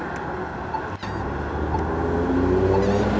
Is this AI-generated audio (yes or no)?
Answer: no